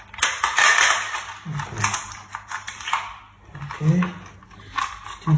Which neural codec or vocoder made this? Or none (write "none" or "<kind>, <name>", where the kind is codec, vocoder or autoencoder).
none